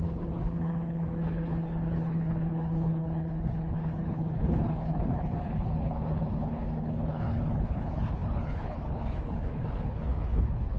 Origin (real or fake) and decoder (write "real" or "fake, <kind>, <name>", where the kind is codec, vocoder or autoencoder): fake, codec, HILCodec